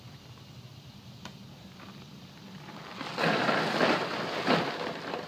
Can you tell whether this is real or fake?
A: real